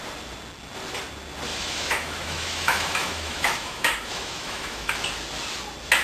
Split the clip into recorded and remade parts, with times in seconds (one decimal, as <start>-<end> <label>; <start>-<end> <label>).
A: 0.0-1.5 recorded; 1.5-4.9 remade; 4.9-6.0 recorded